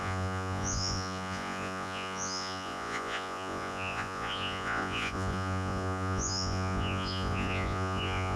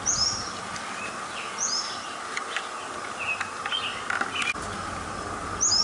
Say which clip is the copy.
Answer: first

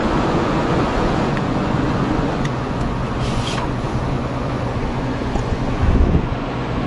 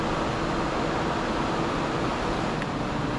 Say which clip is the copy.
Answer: first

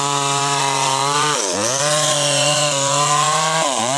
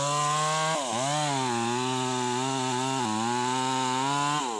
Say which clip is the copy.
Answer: first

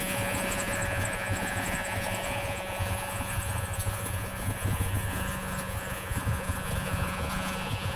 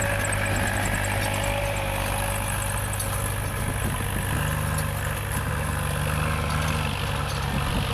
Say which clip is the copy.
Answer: first